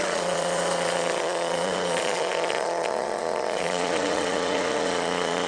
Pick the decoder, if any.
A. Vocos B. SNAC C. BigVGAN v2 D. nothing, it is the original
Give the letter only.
A